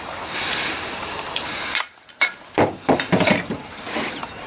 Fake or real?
fake